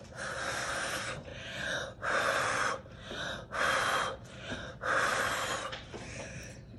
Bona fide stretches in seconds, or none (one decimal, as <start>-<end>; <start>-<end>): 0.0-5.1; 5.8-6.8